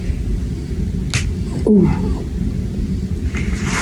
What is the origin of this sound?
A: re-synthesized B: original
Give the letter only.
B